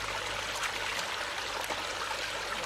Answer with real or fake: real